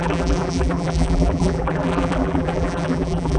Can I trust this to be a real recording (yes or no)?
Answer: no